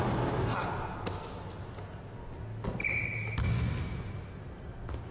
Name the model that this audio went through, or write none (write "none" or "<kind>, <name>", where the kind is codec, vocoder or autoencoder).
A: none